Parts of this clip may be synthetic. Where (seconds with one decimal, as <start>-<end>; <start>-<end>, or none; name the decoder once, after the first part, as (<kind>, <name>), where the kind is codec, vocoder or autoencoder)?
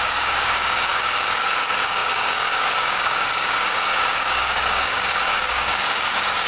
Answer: 0.0-6.5 (codec, DAC)